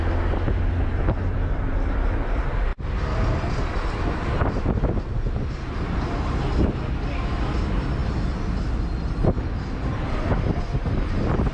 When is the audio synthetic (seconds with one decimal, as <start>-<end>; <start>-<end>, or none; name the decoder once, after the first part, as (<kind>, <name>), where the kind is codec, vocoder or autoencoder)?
2.7-4.0 (vocoder, BigVGAN v2)